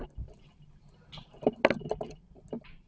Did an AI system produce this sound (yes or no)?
no